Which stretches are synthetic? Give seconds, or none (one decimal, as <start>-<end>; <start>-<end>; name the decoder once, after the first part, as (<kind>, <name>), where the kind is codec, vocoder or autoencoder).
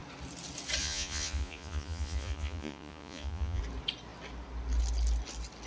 0.8-3.6 (vocoder, Vocos)